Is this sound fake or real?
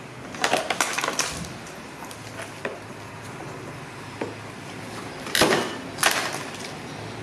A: real